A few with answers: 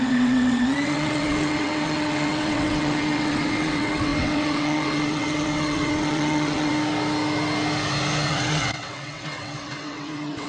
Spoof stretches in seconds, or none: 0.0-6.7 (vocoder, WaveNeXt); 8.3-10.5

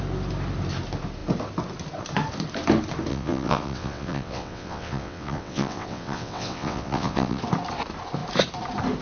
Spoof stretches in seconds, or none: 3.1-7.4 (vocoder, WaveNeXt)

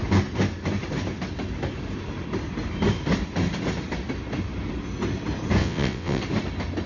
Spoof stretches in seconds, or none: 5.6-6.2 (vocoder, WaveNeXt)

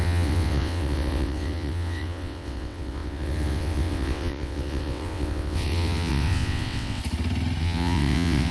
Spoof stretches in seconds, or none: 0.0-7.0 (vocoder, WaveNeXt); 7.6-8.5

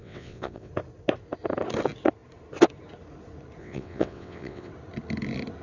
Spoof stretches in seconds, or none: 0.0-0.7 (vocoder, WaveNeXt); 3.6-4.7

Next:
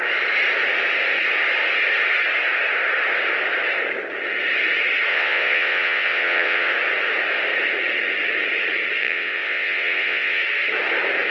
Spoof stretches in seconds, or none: 5.1-6.7 (vocoder, WaveNeXt); 9.0-10.4